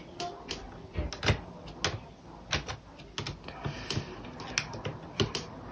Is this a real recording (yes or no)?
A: yes